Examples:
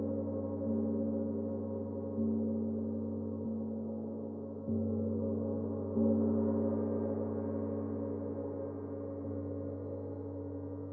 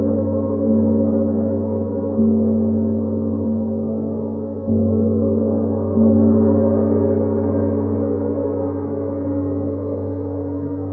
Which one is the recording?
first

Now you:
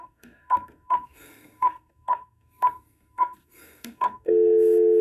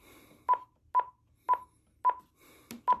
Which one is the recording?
second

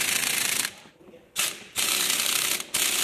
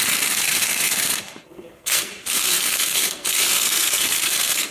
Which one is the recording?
first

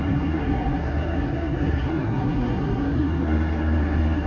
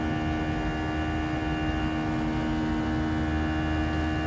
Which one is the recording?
second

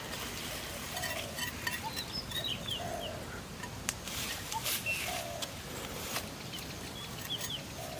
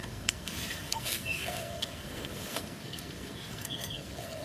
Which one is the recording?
first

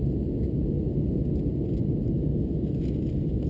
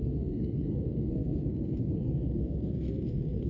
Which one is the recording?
first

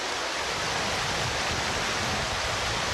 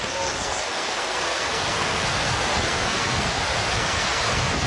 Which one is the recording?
first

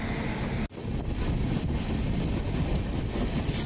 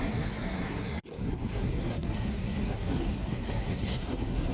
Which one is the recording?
first